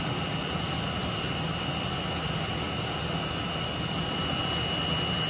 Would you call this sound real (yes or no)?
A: yes